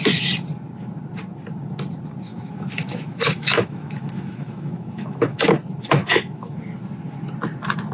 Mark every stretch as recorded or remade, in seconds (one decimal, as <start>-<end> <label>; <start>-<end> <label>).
0.0-2.3 recorded; 2.3-5.4 remade; 5.4-6.0 recorded; 6.0-6.6 remade; 6.6-7.9 recorded